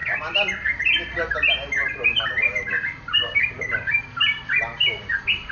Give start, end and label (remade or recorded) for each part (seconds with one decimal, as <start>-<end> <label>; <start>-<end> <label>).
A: 0.0-0.8 remade; 0.8-1.8 recorded; 1.8-5.1 remade; 5.1-5.5 recorded